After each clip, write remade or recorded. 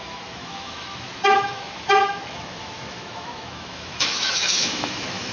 remade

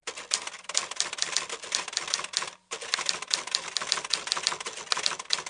recorded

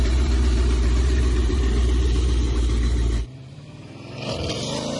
remade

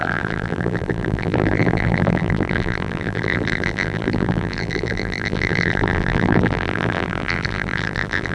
remade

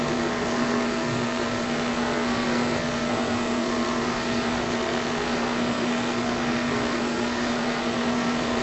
remade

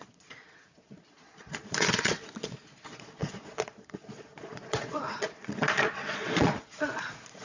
remade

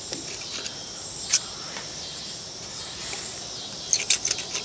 recorded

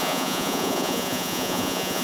remade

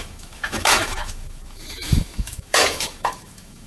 remade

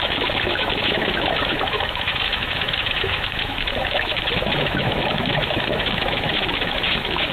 remade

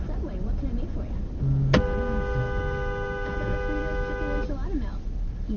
recorded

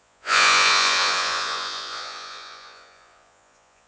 remade